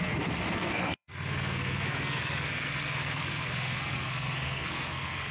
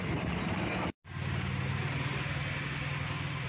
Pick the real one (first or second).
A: second